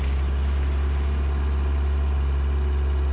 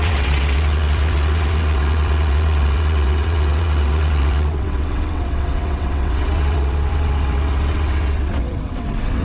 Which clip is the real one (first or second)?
first